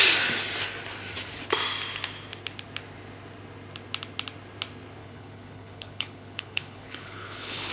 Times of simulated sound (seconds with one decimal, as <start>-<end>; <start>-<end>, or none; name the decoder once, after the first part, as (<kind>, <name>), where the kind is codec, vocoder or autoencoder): 5.0-7.7 (codec, HILCodec)